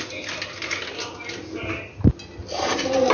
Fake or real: real